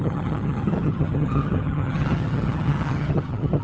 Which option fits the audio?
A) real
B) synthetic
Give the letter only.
B